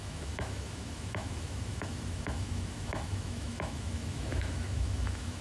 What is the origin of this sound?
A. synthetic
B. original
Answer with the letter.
A